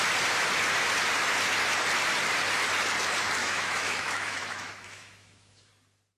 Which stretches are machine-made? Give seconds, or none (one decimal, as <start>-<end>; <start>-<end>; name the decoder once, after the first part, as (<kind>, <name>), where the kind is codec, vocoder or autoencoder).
3.4-5.7 (autoencoder, DAC-VAE)